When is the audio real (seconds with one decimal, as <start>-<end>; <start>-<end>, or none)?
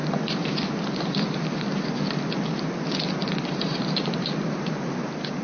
0.0-5.4